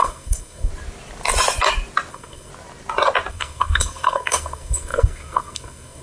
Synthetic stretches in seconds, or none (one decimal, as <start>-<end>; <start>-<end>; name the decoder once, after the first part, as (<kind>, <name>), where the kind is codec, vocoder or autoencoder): 0.0-0.7 (codec, SNAC); 2.1-2.5; 3.3-6.0

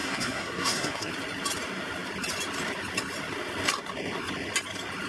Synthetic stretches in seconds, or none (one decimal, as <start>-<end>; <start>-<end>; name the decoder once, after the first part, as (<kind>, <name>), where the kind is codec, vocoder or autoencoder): 0.0-1.1 (codec, SNAC)

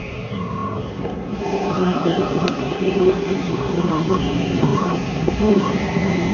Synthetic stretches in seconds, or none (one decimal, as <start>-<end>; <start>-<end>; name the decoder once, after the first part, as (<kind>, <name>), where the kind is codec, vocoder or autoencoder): 0.0-6.3 (codec, SNAC)

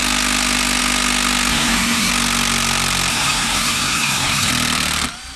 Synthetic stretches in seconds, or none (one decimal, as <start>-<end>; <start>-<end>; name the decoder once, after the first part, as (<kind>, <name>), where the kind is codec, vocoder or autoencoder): 1.5-2.1 (codec, SNAC); 3.1-4.5

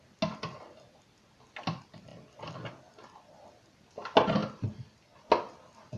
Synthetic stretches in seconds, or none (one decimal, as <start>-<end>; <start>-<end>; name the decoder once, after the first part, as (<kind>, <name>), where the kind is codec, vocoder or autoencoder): none